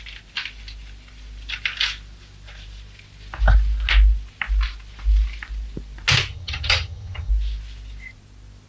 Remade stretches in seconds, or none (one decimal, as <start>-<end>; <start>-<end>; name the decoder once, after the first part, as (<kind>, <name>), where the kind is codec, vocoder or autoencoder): 6.3-7.3 (vocoder, HiFi-GAN)